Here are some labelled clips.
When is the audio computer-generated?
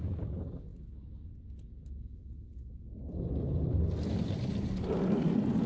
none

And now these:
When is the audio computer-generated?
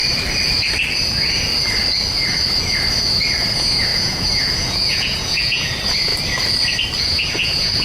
3.4-6.1 (vocoder, Vocos); 7.0-7.8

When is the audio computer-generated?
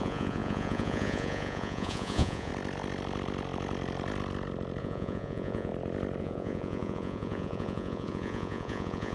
0.0-2.5 (vocoder, Vocos); 4.8-5.7; 6.2-9.1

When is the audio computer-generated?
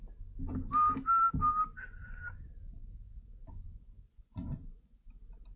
1.7-5.1 (vocoder, Vocos)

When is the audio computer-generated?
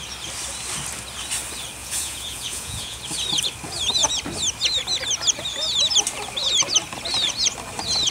1.8-3.0 (vocoder, Vocos)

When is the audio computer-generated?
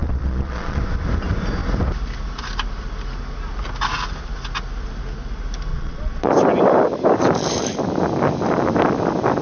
0.0-0.8 (vocoder, Vocos); 5.7-6.3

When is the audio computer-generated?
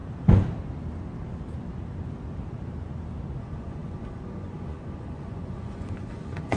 3.4-6.6 (vocoder, Vocos)